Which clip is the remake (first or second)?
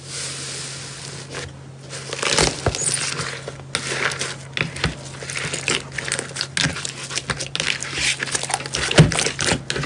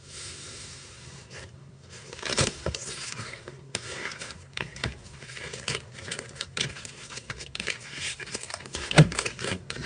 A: second